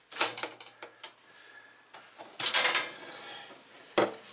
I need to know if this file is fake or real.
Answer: real